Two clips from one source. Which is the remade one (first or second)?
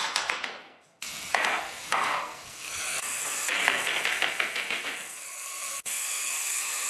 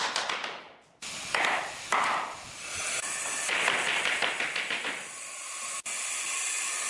first